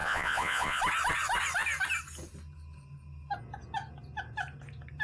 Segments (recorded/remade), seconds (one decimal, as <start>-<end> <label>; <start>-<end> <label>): 0.0-0.8 remade; 0.8-5.0 recorded